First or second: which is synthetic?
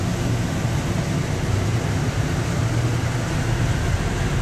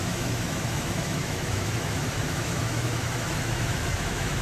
second